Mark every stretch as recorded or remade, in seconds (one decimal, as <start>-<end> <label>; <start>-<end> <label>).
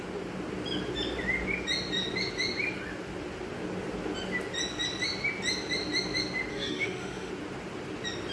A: 0.0-6.5 recorded; 6.5-7.3 remade; 7.3-8.3 recorded